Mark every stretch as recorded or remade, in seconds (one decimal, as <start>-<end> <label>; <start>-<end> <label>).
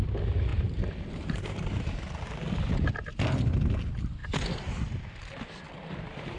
0.0-0.5 recorded; 0.5-2.3 remade; 2.3-6.4 recorded